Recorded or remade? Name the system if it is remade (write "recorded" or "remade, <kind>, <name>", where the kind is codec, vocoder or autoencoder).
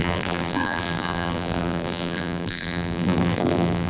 remade, vocoder, BigVGAN v2